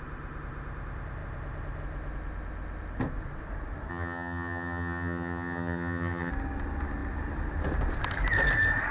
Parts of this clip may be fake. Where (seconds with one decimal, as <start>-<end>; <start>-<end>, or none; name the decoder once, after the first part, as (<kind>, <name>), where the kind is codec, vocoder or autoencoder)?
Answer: 3.9-6.3 (vocoder, HiFi-GAN)